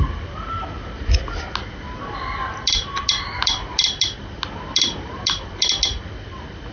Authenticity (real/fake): real